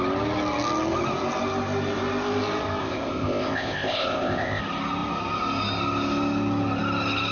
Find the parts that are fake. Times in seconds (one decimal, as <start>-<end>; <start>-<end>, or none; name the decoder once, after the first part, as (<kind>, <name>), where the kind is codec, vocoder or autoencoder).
2.8-4.6 (codec, ZipCodec)